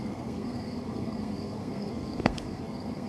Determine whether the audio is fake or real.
fake